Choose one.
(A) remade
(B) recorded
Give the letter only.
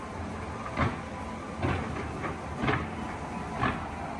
B